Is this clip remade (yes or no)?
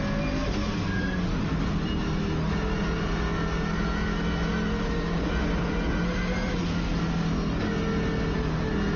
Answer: no